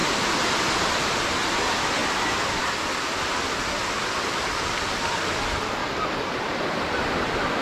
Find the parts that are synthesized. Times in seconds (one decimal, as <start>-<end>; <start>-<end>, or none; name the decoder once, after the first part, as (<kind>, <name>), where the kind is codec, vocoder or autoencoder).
0.0-1.2 (vocoder, BigVGAN v2); 5.8-6.6